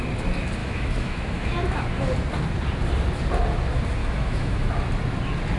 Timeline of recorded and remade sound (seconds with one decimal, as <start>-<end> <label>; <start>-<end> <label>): 0.0-0.6 recorded; 0.6-1.8 remade; 1.8-4.0 recorded; 4.0-4.7 remade; 4.7-5.6 recorded